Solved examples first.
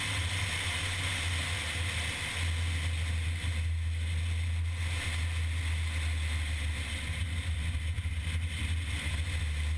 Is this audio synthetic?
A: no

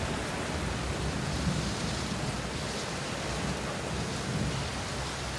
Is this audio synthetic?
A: no